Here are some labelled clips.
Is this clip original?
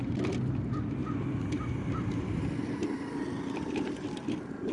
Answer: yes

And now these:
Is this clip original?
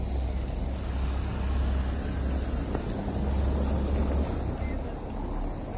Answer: yes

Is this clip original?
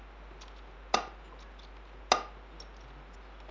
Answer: yes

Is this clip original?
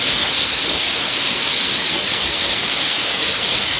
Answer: no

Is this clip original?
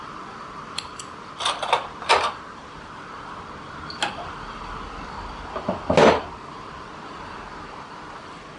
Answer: yes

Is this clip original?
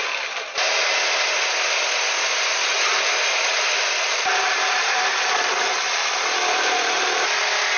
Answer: yes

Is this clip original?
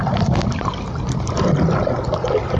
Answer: yes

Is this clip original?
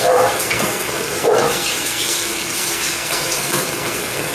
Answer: no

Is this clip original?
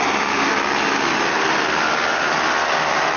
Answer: yes